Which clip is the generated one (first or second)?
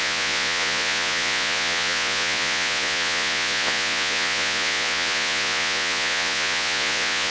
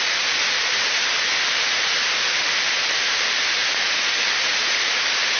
first